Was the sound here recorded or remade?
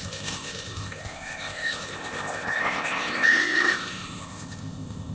remade